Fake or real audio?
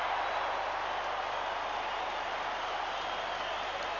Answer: real